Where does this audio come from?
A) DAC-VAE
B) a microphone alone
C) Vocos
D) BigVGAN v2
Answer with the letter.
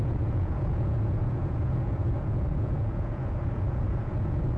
C